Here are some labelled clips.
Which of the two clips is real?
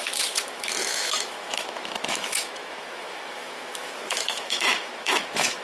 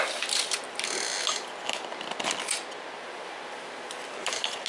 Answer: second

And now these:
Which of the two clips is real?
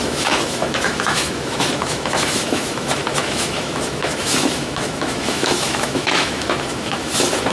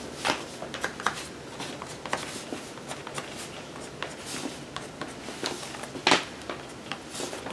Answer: second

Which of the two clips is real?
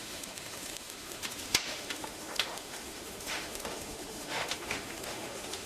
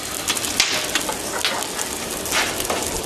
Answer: second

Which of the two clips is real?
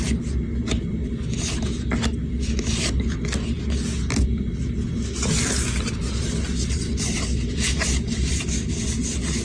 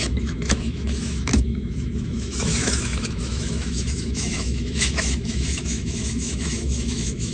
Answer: first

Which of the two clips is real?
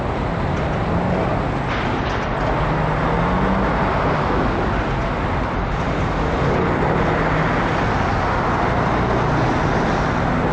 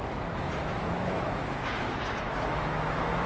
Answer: first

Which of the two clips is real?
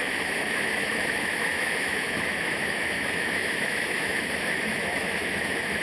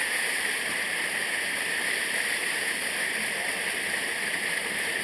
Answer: second